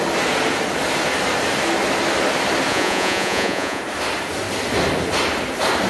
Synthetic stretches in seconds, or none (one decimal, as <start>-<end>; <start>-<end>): 2.7-3.8